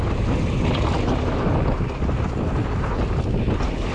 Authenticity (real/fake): real